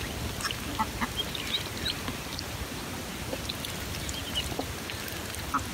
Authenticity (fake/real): real